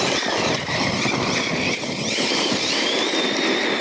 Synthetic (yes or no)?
no